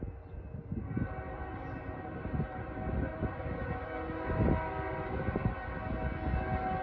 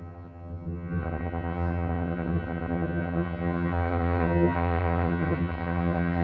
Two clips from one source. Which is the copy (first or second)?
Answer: second